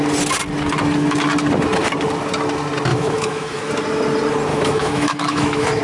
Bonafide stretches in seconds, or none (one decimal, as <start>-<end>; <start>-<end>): 0.0-2.9; 3.7-4.5